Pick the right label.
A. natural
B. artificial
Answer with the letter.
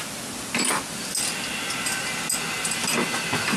A